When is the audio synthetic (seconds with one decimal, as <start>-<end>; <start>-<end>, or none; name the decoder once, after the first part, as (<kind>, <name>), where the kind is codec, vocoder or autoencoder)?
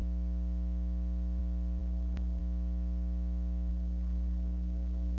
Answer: 1.8-2.4 (codec, SNAC); 3.7-5.2